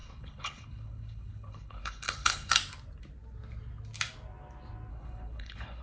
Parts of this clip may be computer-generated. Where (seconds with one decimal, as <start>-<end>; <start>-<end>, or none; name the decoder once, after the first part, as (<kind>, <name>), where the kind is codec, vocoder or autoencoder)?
0.0-2.5 (codec, HILCodec); 4.9-5.8